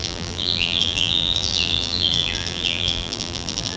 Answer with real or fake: fake